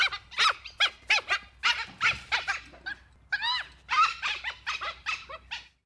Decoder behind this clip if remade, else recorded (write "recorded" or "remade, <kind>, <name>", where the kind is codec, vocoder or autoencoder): recorded